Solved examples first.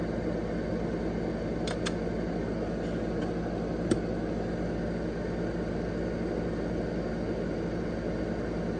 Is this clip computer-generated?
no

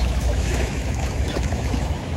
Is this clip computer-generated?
yes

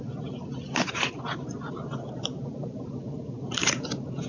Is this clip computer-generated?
yes